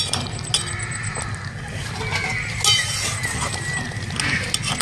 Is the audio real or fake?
real